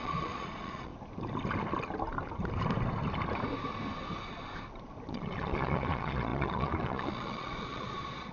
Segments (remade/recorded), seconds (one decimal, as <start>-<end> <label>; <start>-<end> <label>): 0.0-0.9 remade; 0.9-5.1 recorded; 5.1-8.3 remade